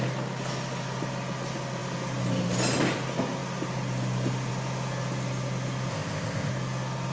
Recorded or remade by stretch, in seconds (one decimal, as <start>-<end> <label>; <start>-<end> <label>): 0.0-5.9 recorded; 5.9-6.5 remade; 6.5-7.1 recorded